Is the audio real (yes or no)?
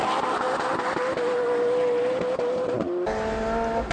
yes